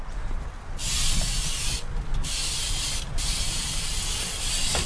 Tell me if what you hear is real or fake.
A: real